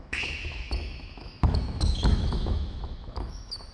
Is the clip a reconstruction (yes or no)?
yes